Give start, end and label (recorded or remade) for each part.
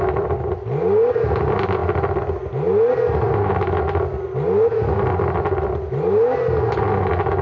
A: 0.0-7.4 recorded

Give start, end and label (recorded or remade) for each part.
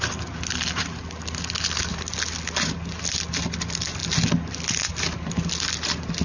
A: 0.0-6.2 recorded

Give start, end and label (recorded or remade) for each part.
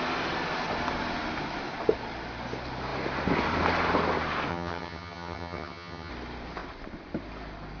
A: 0.0-4.5 recorded; 4.5-6.1 remade; 6.1-7.8 recorded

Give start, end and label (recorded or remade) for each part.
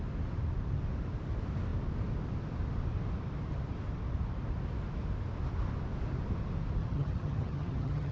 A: 0.0-6.8 recorded; 6.8-8.1 remade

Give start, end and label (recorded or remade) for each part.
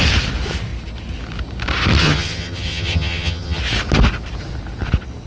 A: 0.0-2.0 recorded; 2.0-3.6 remade; 3.6-5.3 recorded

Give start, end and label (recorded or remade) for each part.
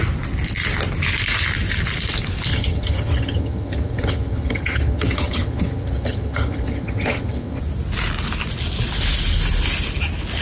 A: 0.0-2.5 recorded; 2.5-7.6 remade; 7.6-10.4 recorded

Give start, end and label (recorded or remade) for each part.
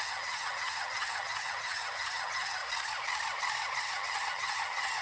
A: 0.0-2.6 remade; 2.6-3.8 recorded; 3.8-5.0 remade